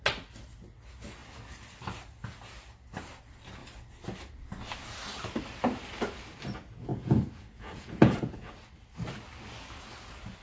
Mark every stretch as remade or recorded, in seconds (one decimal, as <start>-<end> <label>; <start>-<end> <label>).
0.0-6.9 recorded; 6.9-8.5 remade; 8.5-10.4 recorded